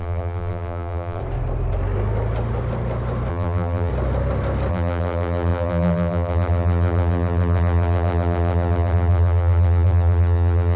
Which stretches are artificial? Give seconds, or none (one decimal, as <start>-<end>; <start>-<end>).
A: 0.0-1.2; 3.3-3.9; 4.7-10.8